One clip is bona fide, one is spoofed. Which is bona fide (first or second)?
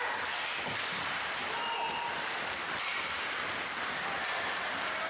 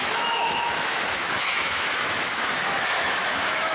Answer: first